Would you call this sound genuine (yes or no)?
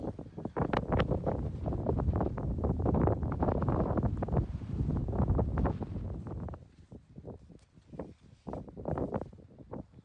yes